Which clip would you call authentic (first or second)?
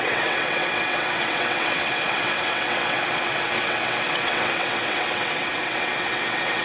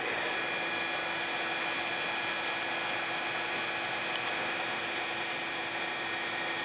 second